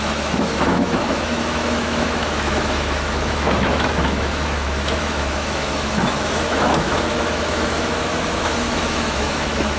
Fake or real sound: fake